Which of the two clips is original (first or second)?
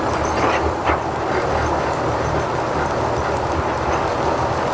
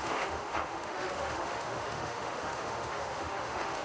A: first